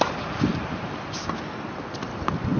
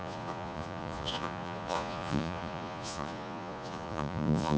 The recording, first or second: first